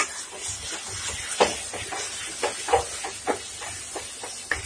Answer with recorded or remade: recorded